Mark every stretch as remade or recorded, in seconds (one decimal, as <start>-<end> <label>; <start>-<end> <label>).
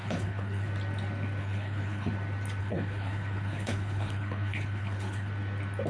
0.0-0.7 remade; 0.7-1.4 recorded; 1.4-2.1 remade; 2.1-2.6 recorded; 2.6-5.3 remade; 5.3-5.9 recorded